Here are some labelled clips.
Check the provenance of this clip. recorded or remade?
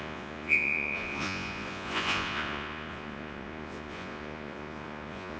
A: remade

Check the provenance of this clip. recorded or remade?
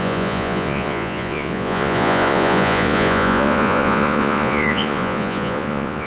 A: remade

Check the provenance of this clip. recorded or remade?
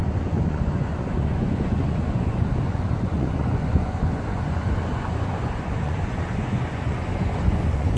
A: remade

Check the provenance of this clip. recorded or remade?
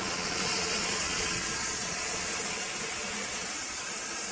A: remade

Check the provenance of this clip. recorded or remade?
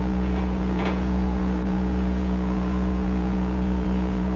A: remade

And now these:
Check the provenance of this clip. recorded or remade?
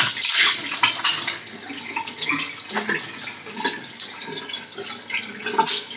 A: recorded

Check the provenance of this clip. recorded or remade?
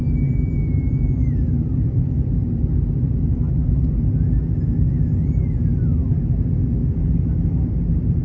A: recorded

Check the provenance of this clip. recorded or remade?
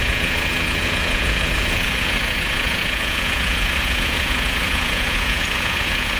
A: remade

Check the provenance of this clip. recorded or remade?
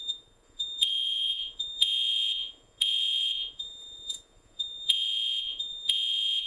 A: remade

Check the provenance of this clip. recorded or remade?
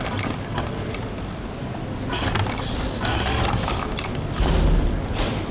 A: recorded